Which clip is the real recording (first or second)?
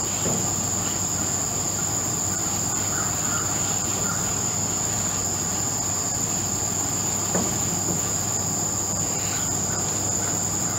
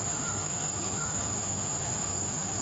first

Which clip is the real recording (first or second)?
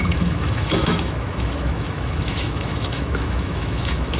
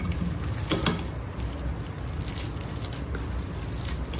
second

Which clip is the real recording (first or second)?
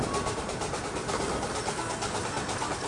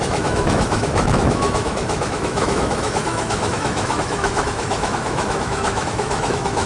first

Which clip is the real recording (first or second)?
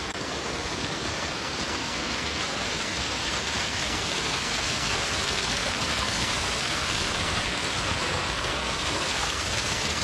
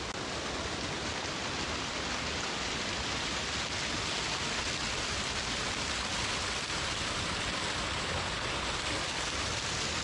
second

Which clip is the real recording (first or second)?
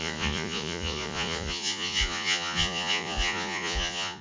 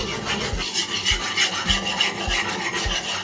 second